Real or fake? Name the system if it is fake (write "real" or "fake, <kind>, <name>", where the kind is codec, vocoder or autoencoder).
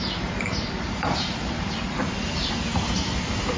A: fake, vocoder, BigVGAN v2